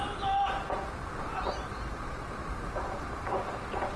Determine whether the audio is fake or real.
real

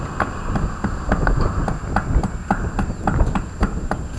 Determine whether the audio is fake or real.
real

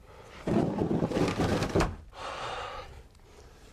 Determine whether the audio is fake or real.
real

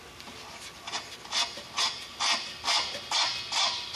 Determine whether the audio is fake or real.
real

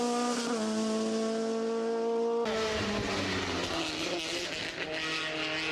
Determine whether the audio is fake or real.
real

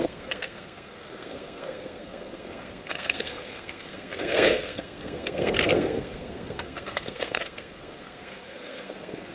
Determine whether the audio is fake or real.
fake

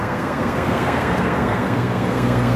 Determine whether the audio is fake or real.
fake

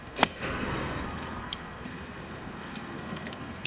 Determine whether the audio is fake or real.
fake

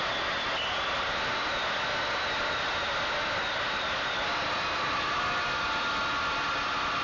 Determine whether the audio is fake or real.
real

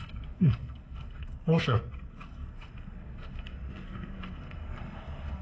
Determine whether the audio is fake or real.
fake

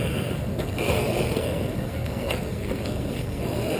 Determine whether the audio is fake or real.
fake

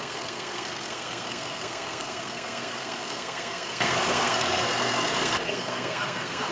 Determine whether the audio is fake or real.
fake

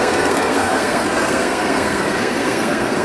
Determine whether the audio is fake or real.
fake